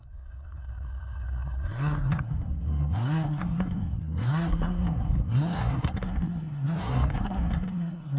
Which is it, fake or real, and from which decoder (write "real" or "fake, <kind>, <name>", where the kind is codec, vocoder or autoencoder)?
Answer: fake, codec, SNAC